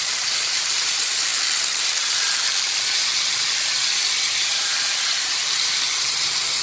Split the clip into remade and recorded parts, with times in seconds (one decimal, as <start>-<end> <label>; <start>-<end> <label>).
0.0-1.3 remade; 1.3-4.2 recorded; 4.2-5.4 remade; 5.4-6.1 recorded; 6.1-6.6 remade